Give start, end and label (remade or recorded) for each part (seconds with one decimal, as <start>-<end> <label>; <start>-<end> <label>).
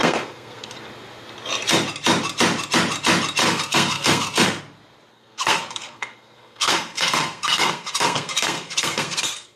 0.0-0.7 remade; 0.7-3.4 recorded; 3.4-4.6 remade; 4.6-5.1 recorded; 5.1-9.6 remade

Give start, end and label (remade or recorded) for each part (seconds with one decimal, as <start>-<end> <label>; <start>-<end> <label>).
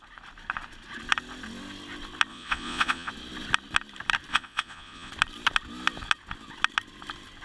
0.0-2.3 recorded; 2.3-3.1 remade; 3.1-4.3 recorded; 4.3-5.1 remade; 5.1-7.4 recorded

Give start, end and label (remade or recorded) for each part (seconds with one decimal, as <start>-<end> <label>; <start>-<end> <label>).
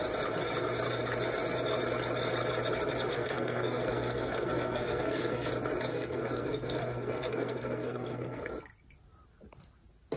0.0-3.1 recorded; 3.1-5.5 remade; 5.5-5.9 recorded; 5.9-8.5 remade; 8.5-10.2 recorded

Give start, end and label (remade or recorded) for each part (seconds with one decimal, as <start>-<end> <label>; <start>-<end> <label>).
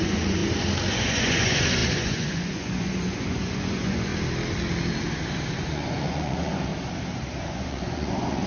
0.0-0.4 remade; 0.4-0.9 recorded; 0.9-4.1 remade; 4.1-5.6 recorded; 5.6-6.7 remade; 6.7-7.5 recorded; 7.5-8.5 remade